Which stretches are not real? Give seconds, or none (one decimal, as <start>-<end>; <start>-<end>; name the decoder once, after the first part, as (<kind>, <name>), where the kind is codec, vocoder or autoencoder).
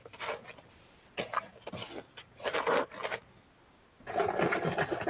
none